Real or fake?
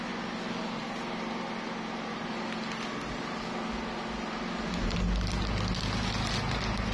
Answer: real